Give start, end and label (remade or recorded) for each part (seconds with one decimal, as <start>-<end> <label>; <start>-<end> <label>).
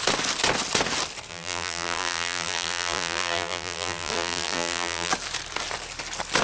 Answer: 0.0-1.3 recorded; 1.3-5.1 remade; 5.1-6.4 recorded